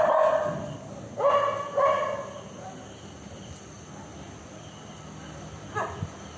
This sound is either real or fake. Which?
real